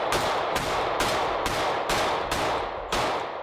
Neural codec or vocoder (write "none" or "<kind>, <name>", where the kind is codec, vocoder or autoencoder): none